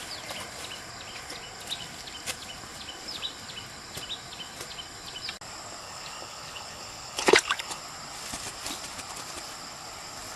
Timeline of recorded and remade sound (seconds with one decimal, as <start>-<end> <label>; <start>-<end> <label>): 0.0-5.8 recorded; 5.8-7.8 remade; 7.8-10.4 recorded